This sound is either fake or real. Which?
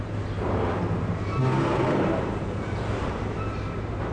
fake